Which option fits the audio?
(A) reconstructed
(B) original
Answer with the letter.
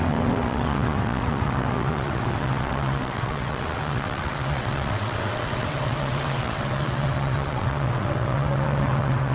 A